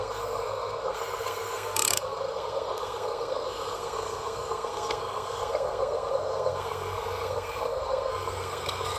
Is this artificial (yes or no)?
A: yes